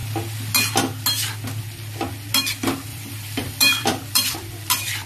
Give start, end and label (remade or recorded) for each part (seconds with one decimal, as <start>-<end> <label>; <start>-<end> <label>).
0.0-2.9 recorded; 2.9-4.5 remade; 4.5-5.1 recorded